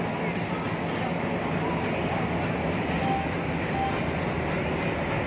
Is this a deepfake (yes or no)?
no